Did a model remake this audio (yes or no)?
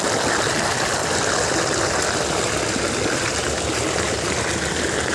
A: no